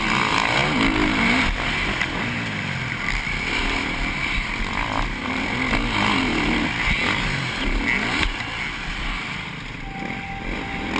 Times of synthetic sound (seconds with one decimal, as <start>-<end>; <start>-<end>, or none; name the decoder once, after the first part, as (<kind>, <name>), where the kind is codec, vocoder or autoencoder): none